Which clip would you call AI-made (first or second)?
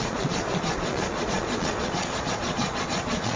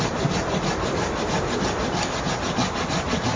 first